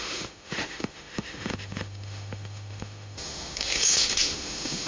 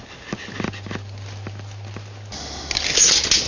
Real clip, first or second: second